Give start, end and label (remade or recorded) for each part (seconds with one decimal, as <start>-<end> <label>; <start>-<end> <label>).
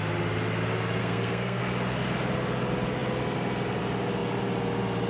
0.0-1.0 recorded; 1.0-1.6 remade; 1.6-5.1 recorded